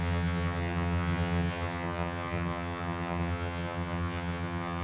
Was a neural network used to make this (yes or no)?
yes